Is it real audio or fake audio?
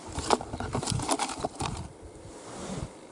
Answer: real